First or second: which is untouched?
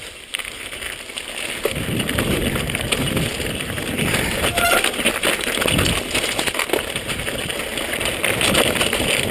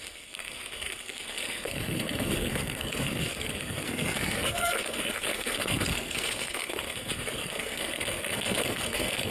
first